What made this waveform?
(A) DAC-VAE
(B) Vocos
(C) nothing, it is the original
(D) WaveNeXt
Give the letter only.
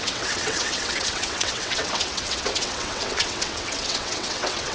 D